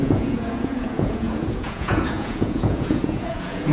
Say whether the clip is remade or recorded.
remade